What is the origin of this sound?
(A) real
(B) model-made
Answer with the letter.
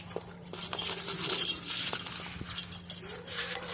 A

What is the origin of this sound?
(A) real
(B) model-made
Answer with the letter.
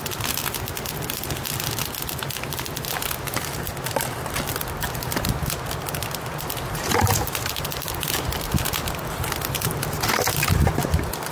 A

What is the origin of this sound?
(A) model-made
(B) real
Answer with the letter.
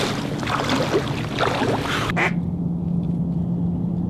B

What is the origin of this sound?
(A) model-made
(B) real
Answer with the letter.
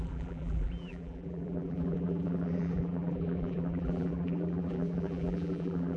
A